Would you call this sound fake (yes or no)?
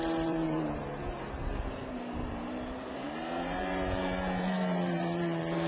yes